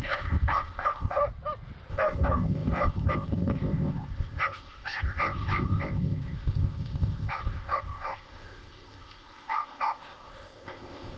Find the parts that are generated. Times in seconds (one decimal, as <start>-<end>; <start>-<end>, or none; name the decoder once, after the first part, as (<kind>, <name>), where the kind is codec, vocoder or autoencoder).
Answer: 0.0-1.2 (codec, ZipCodec); 1.9-11.2